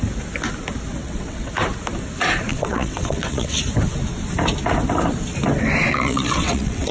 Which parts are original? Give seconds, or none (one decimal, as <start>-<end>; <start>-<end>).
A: 0.0-1.0; 1.5-2.5; 3.6-5.9